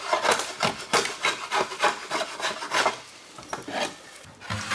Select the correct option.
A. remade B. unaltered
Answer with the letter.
B